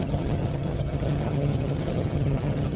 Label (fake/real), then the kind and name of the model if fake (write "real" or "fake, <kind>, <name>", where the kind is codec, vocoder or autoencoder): fake, vocoder, HiFi-GAN